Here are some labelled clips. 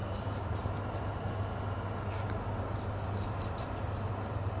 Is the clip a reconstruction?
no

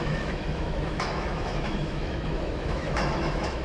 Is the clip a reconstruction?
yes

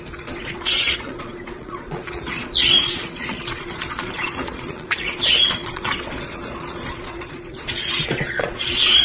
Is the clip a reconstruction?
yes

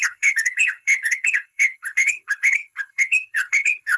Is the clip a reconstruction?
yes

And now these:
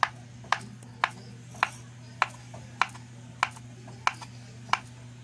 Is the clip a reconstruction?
no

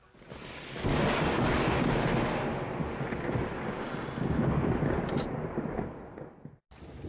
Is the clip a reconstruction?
no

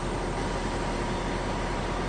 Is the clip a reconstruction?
no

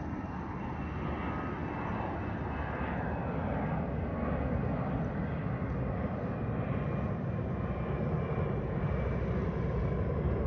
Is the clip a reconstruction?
no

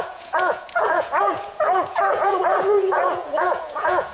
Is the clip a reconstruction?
yes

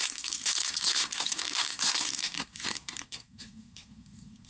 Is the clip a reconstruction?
yes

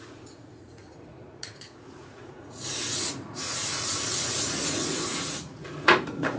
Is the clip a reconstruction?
yes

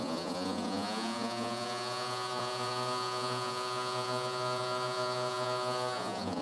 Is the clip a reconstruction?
yes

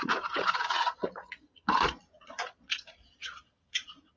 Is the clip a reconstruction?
yes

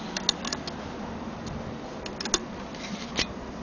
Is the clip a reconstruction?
no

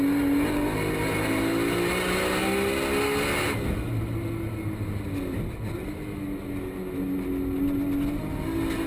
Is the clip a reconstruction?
no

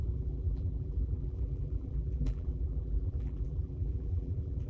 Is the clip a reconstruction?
yes